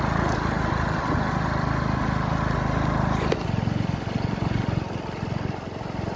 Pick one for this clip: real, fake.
real